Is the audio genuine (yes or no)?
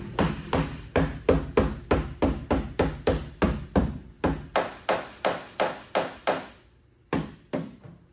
yes